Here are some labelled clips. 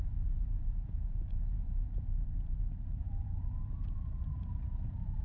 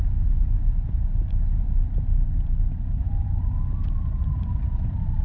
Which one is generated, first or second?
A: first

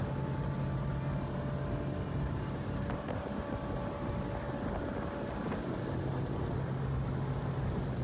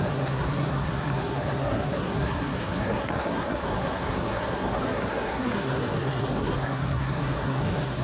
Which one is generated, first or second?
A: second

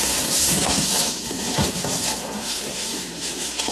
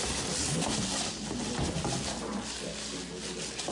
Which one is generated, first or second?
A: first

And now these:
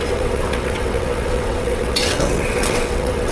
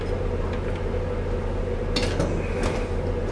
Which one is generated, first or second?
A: first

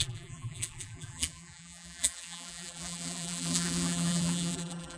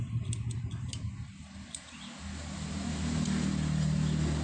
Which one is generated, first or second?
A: first